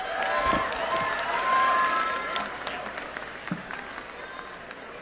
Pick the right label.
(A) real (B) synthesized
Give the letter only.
A